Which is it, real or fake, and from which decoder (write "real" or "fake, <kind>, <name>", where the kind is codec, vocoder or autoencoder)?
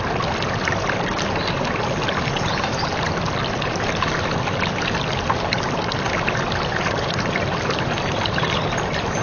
real